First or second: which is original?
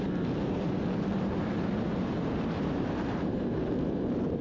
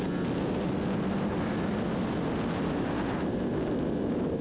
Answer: second